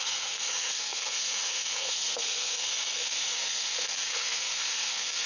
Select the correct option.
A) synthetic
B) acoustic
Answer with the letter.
A